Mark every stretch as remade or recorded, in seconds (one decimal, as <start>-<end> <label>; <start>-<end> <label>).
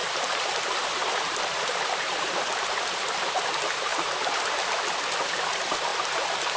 0.0-2.8 remade; 2.8-3.9 recorded; 3.9-4.4 remade; 4.4-6.6 recorded